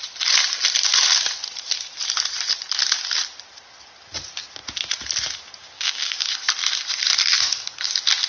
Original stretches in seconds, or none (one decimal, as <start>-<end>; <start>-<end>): 0.0-5.6; 6.3-8.3